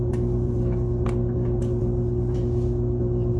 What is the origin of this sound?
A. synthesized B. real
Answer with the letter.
B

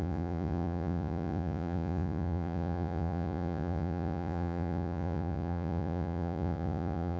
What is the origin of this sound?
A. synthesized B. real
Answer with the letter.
A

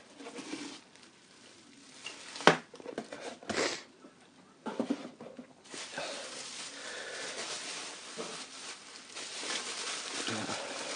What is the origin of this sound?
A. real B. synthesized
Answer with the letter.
A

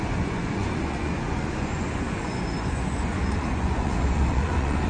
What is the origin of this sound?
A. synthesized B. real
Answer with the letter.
A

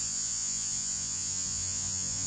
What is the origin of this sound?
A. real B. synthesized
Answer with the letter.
B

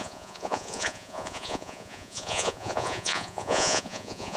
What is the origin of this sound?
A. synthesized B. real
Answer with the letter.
A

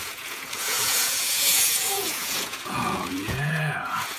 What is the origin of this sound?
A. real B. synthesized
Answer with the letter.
B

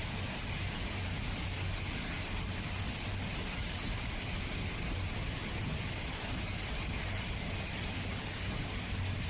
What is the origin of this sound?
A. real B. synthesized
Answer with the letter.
A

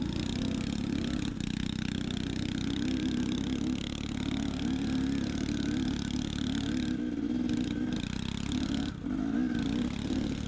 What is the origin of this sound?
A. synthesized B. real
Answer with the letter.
B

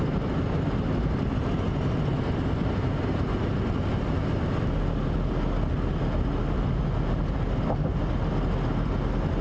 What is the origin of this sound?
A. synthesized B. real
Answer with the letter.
B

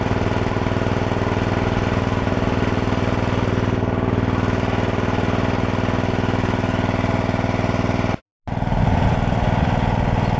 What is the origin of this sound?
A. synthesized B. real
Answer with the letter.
B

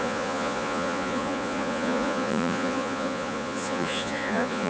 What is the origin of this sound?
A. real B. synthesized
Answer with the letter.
B